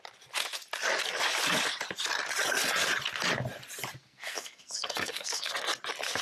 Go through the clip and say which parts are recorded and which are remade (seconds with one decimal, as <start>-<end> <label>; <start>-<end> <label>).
0.0-4.0 recorded; 4.0-5.5 remade; 5.5-6.2 recorded